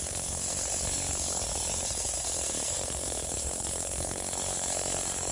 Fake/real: fake